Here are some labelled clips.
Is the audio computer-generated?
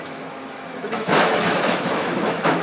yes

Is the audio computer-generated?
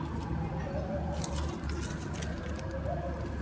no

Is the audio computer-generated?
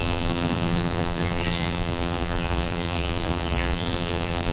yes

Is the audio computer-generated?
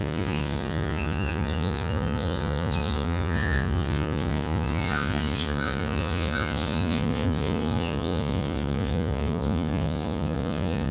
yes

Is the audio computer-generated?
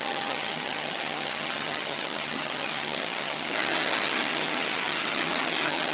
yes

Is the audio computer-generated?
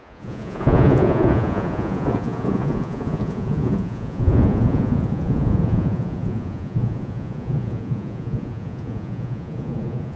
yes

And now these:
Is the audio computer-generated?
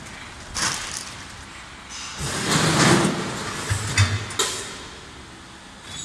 no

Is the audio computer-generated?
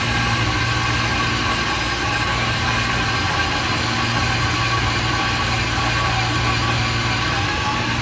no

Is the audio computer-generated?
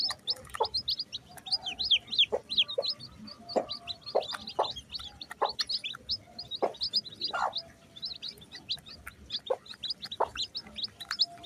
no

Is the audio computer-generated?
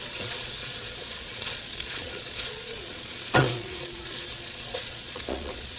yes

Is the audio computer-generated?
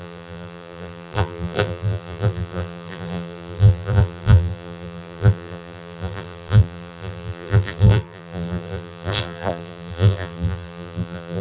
yes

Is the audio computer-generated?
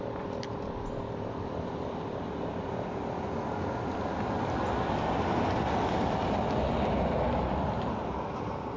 no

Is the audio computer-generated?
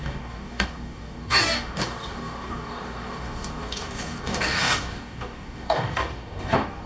yes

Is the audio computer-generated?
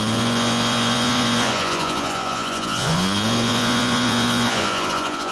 yes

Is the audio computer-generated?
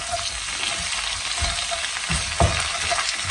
no